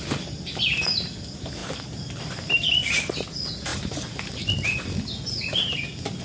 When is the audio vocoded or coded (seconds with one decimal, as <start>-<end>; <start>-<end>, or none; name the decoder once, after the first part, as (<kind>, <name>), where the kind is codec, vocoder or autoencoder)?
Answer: none